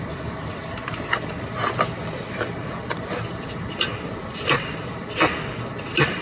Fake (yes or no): yes